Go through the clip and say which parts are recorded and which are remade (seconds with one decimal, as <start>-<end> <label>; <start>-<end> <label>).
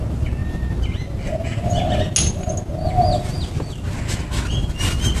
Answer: 0.0-5.2 recorded